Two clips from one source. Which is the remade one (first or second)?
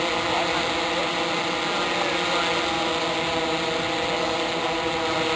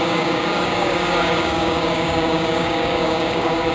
second